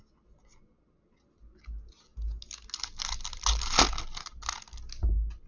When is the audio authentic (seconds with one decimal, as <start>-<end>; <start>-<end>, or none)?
0.0-5.5